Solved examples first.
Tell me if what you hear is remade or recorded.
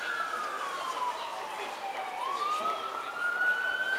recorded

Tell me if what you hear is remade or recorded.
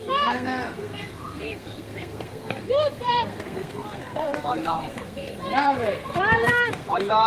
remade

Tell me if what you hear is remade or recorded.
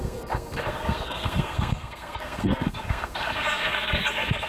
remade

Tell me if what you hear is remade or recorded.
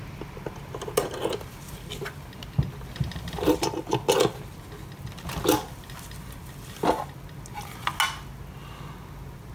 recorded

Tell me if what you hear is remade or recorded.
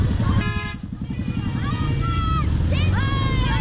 recorded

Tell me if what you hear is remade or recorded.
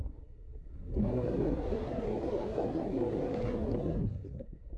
remade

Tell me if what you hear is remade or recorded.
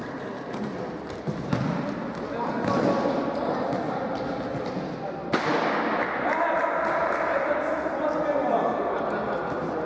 recorded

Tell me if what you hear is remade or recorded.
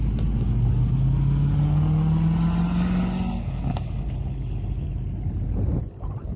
recorded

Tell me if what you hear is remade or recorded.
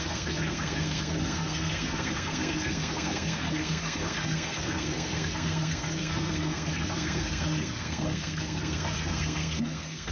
remade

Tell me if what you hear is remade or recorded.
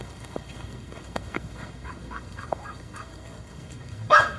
remade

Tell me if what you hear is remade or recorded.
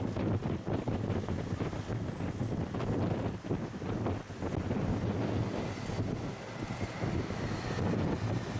recorded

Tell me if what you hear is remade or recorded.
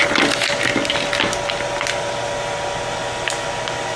recorded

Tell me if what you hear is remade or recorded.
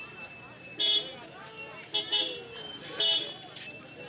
recorded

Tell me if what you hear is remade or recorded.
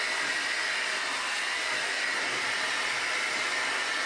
recorded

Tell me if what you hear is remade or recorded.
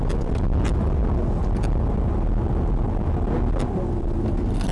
recorded